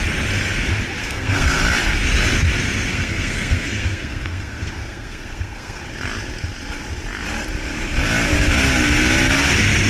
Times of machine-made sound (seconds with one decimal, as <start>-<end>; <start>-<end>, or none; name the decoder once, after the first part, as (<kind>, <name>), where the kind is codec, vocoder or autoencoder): 1.0-1.6 (codec, SNAC); 2.9-5.8